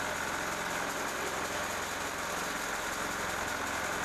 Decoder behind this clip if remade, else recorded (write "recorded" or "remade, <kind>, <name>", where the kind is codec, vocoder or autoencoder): recorded